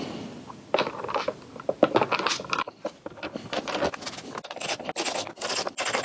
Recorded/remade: recorded